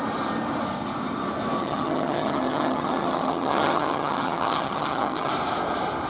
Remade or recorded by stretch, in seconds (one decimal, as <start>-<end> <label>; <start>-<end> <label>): 0.0-1.6 recorded; 1.6-5.3 remade; 5.3-6.1 recorded